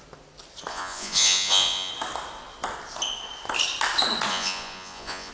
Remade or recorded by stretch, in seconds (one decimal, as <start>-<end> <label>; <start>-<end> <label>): 0.0-0.7 recorded; 0.7-1.9 remade; 1.9-4.3 recorded; 4.3-5.3 remade